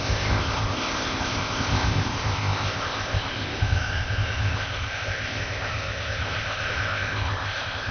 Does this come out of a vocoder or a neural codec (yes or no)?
yes